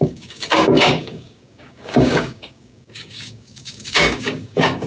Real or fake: fake